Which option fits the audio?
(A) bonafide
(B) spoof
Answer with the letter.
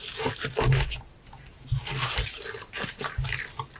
A